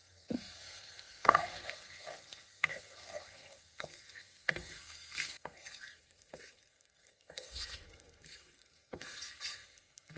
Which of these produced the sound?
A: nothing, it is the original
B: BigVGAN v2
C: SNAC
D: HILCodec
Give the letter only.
C